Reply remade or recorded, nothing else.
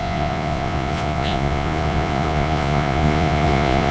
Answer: remade